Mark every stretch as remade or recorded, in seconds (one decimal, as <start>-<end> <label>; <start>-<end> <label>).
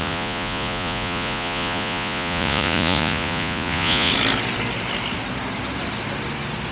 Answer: 0.0-4.1 remade; 4.1-6.7 recorded